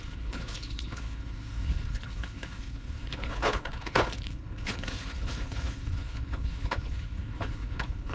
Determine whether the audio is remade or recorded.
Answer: remade